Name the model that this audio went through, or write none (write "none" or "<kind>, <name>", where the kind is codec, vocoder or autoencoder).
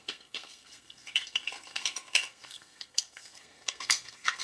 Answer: codec, SNAC